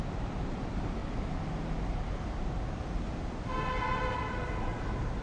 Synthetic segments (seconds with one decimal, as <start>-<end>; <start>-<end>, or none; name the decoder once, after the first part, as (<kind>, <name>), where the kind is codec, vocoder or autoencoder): 0.0-1.0 (vocoder, BigVGAN v2); 2.1-5.2